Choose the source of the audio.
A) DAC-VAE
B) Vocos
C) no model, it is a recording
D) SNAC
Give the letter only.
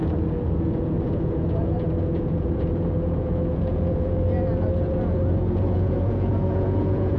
B